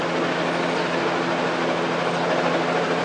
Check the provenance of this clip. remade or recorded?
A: recorded